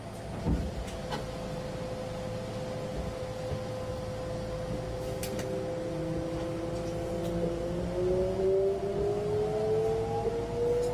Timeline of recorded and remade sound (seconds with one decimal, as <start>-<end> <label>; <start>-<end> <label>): 0.0-10.9 recorded